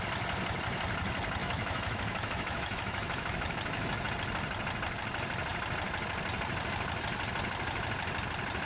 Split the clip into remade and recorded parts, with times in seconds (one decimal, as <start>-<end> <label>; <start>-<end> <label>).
0.0-1.4 recorded; 1.4-4.1 remade; 4.1-8.7 recorded